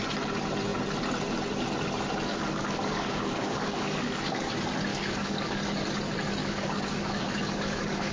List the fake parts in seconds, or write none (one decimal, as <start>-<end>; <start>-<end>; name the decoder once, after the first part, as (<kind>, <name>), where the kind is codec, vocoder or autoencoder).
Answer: 2.3-4.5 (codec, DAC); 4.9-5.6; 6.4-8.1